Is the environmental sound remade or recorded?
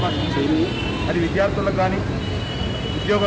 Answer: recorded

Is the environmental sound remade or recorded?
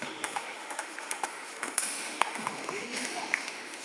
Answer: remade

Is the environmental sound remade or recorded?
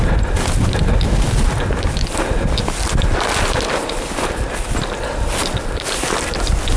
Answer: recorded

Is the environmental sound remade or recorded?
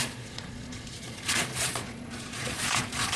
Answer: remade